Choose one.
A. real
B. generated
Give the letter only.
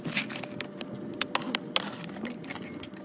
A